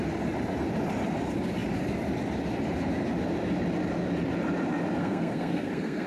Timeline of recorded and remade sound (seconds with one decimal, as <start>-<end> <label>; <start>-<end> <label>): 0.0-5.0 recorded; 5.0-6.1 remade